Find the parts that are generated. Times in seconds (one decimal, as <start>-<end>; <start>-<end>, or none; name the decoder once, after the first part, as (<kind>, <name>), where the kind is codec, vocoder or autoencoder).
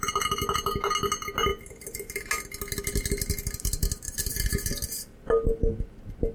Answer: none